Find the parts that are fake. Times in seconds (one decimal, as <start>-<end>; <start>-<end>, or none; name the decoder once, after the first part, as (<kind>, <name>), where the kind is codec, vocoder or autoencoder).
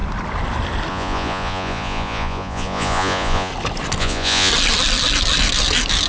0.9-3.5 (vocoder, Vocos); 4.0-4.5